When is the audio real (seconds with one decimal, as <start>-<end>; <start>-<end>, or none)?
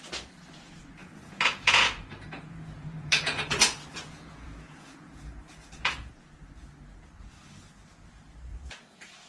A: 0.0-1.0; 6.1-8.5